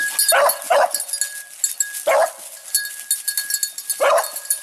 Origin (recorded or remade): recorded